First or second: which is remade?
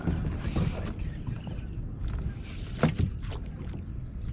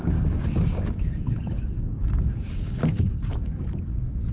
second